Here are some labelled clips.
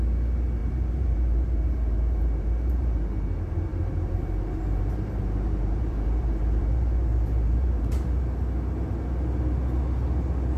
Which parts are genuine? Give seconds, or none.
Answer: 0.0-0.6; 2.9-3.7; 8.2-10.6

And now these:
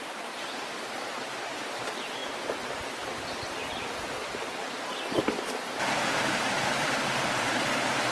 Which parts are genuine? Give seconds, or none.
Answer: 2.2-5.8